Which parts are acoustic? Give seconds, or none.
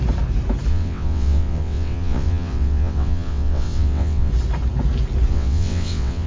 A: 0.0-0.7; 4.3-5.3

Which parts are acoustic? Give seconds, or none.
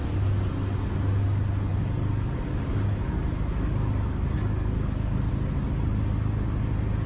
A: 0.0-1.7; 5.3-7.1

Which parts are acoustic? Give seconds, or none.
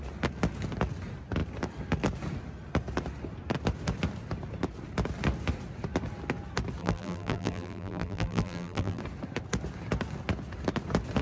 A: 0.0-6.8; 9.0-11.2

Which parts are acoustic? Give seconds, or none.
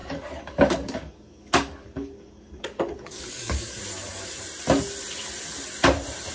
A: 3.8-6.3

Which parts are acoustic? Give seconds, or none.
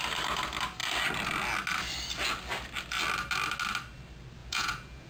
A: 0.0-4.4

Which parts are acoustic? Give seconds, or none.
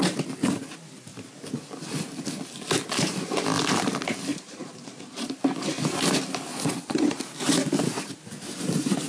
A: 0.0-4.3; 5.3-6.5; 7.2-9.1